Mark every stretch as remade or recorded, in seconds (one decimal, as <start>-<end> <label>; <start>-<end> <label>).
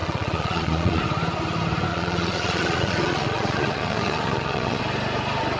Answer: 0.0-1.0 remade; 1.0-1.9 recorded; 1.9-4.8 remade; 4.8-5.6 recorded